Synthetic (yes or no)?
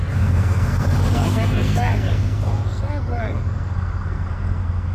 yes